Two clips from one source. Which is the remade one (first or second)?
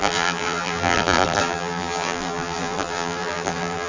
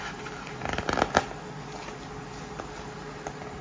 first